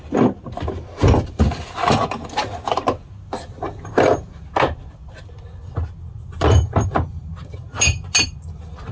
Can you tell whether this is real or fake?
real